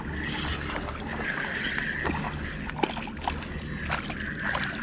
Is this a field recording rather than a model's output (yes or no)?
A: yes